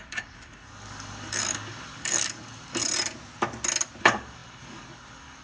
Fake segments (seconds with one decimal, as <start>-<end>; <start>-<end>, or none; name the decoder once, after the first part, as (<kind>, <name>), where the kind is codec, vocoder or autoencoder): 0.0-2.8 (codec, DAC); 4.0-5.4